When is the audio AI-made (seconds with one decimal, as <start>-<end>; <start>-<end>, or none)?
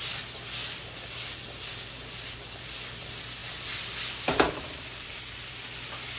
none